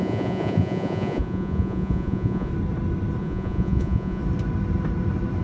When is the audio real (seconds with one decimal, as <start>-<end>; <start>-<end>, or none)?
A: 2.5-3.2; 4.2-5.4